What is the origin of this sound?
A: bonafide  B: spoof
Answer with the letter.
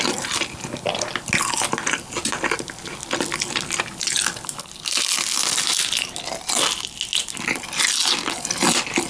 A